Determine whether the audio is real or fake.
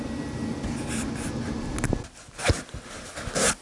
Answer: real